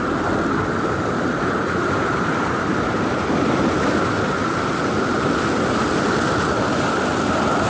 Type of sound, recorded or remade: recorded